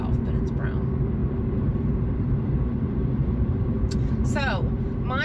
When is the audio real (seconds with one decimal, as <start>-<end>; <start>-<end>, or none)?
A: 0.0-1.2; 4.3-5.2